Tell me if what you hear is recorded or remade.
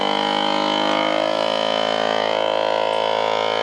recorded